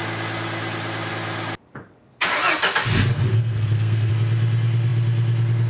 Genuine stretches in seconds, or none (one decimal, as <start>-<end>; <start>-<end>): 0.0-3.3; 4.1-5.7